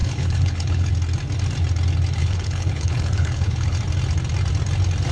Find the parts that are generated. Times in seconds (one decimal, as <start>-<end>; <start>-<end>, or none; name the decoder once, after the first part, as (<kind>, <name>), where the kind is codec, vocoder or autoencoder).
0.0-0.9 (codec, HILCodec); 2.2-3.8